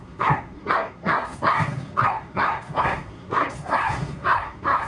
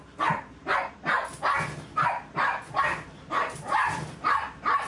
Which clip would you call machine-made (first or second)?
first